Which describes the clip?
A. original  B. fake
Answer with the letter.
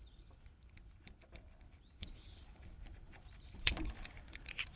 B